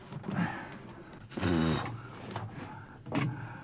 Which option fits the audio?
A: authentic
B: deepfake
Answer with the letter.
A